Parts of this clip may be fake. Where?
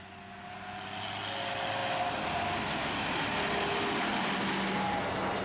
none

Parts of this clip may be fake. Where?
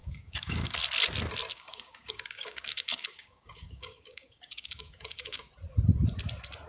0.0-0.8 (codec, DAC); 1.5-5.5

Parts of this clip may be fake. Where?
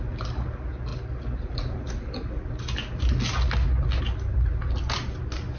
none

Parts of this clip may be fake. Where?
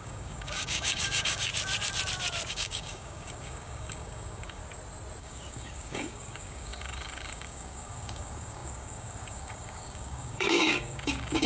0.0-1.5 (codec, DAC); 2.5-4.6; 5.2-11.5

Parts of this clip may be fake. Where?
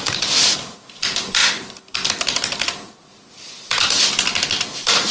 none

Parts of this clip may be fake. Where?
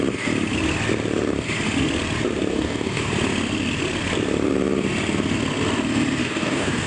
2.5-3.1 (codec, DAC); 6.2-6.9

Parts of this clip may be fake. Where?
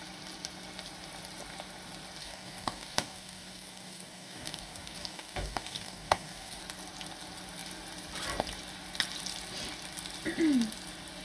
2.2-6.6 (codec, DAC)